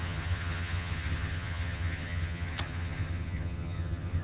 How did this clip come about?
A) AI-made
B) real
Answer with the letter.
A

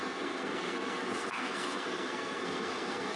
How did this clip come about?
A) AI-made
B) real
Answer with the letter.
A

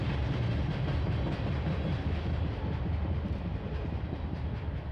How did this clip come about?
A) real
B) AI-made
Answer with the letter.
A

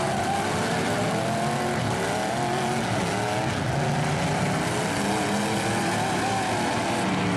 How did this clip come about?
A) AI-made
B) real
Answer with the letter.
B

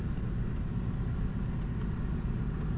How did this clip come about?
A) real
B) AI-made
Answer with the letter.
A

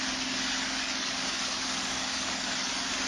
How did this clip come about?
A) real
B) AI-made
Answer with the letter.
B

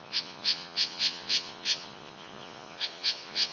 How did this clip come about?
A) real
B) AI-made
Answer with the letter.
B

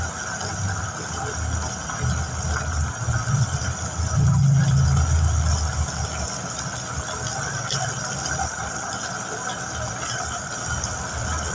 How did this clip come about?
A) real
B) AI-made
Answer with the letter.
A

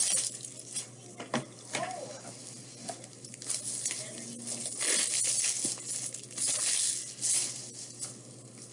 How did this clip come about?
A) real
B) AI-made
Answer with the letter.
A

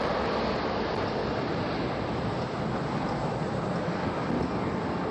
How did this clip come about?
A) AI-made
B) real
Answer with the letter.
B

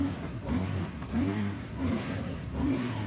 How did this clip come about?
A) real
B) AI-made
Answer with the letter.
B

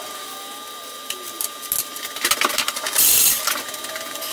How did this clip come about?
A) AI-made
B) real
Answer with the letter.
B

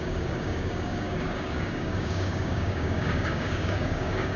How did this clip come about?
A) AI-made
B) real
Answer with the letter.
A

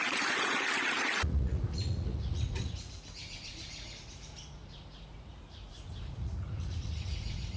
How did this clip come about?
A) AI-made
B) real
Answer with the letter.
A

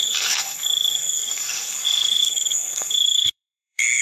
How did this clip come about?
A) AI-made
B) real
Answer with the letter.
A